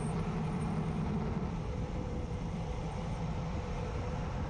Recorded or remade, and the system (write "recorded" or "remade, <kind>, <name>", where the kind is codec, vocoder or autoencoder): recorded